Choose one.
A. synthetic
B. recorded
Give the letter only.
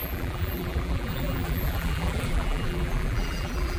A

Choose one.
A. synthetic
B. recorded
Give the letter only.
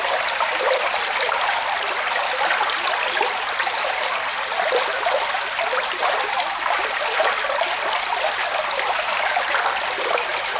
B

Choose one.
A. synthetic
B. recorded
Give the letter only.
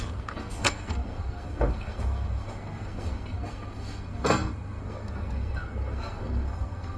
A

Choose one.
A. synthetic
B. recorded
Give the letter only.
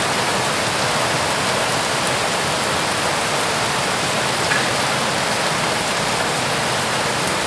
B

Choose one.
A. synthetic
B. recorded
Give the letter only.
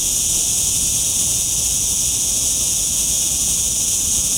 B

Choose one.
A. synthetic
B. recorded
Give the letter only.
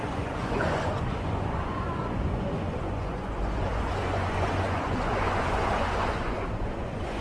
A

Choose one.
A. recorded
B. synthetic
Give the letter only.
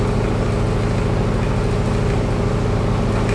A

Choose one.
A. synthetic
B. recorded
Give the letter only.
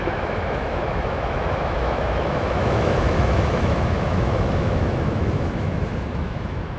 A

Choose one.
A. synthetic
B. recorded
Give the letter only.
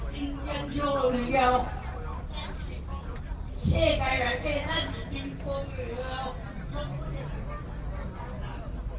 B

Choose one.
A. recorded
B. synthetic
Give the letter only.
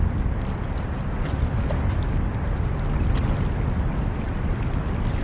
A